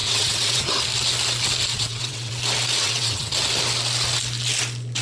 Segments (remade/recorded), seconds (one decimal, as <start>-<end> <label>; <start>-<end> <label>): 0.0-0.8 remade; 0.8-1.7 recorded; 1.7-2.3 remade; 2.3-2.8 recorded; 2.8-3.3 remade; 3.3-5.0 recorded